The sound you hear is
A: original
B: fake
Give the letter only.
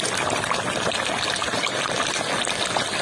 A